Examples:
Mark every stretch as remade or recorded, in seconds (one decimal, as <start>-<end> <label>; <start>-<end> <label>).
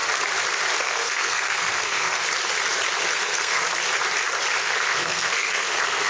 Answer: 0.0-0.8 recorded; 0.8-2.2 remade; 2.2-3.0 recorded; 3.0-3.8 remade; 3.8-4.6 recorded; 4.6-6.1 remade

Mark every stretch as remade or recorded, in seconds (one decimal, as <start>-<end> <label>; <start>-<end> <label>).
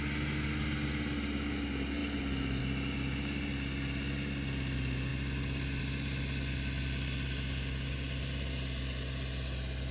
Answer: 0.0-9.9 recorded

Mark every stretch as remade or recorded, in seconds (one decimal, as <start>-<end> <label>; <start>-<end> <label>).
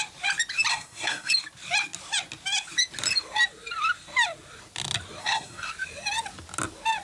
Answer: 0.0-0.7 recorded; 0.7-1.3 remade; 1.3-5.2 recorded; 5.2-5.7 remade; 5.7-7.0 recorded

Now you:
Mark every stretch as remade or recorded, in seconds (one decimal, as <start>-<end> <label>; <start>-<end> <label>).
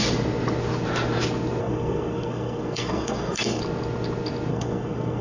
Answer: 0.0-1.6 recorded; 1.6-3.6 remade; 3.6-4.5 recorded; 4.5-5.2 remade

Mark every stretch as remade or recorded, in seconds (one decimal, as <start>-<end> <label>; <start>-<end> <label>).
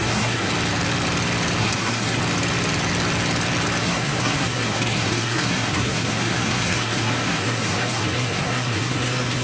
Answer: 0.0-0.5 remade; 0.5-1.6 recorded; 1.6-2.2 remade; 2.2-3.8 recorded; 3.8-9.4 remade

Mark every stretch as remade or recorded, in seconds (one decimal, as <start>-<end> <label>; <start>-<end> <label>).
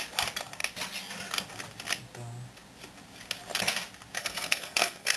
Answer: 0.0-4.2 recorded; 4.2-5.2 remade